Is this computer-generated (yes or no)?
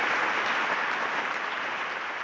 no